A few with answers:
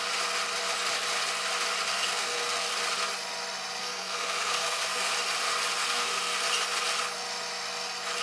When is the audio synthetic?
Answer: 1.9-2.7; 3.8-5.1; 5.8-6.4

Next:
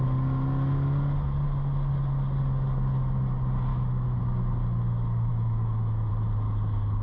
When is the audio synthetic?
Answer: 3.7-4.2; 5.3-6.1

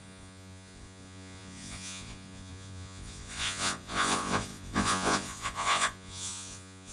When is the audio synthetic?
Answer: 0.0-6.9

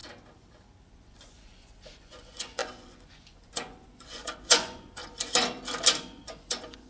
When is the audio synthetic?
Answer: 0.8-5.0; 6.0-6.9

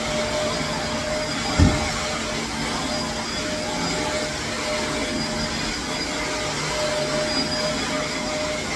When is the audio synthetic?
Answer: none

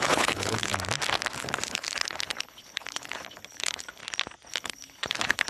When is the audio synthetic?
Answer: 0.0-0.7; 1.4-4.0; 4.5-5.5